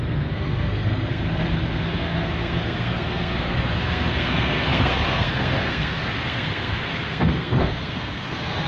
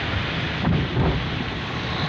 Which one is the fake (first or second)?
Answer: first